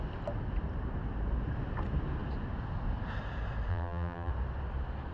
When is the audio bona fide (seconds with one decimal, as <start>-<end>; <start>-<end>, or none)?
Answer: 0.0-3.7; 4.3-5.1